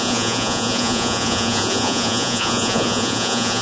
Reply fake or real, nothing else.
fake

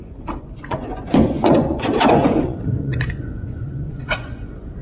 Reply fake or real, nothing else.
fake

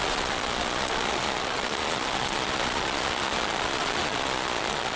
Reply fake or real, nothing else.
fake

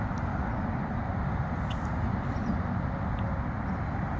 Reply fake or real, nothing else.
real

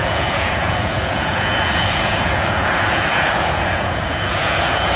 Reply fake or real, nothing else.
fake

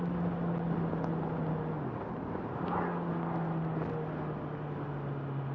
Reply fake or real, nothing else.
real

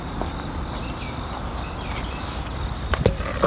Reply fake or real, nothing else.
real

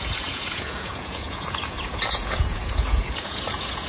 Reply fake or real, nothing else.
fake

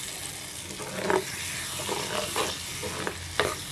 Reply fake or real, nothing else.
real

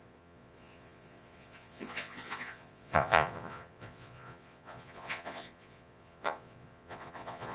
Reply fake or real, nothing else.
fake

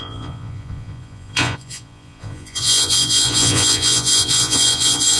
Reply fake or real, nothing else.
fake